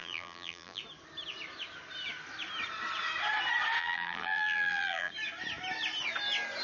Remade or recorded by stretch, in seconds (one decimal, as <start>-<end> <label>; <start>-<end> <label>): 0.0-0.8 remade; 0.8-3.8 recorded; 3.8-5.1 remade; 5.1-6.6 recorded